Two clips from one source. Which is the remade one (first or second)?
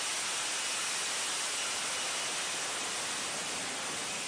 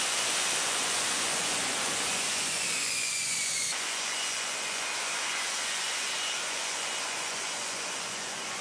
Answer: second